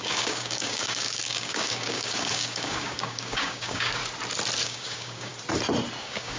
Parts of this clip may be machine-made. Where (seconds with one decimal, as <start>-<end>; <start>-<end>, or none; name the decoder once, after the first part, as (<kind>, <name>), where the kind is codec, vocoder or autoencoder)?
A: 0.0-4.0 (codec, DAC); 4.6-5.3; 6.0-6.4